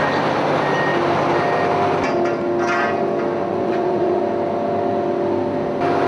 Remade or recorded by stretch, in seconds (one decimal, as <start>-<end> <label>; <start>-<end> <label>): 0.0-3.4 recorded; 3.4-4.2 remade; 4.2-6.1 recorded